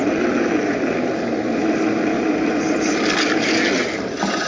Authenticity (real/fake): real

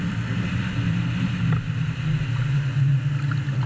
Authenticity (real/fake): real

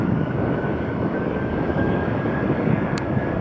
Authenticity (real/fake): fake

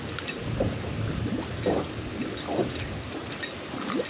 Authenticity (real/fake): real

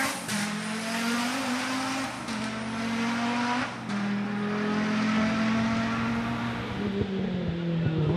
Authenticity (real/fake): real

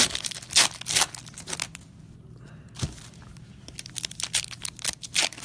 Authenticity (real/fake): real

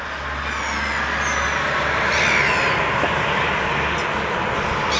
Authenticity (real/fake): real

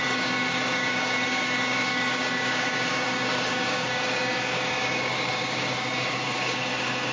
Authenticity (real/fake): fake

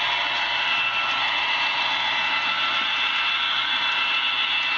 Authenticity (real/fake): real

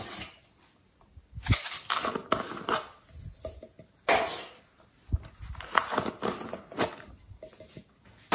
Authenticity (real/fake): real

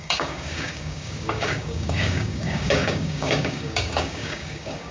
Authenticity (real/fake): fake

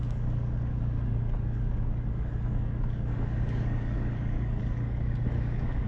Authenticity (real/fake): fake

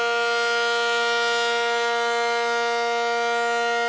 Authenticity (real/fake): real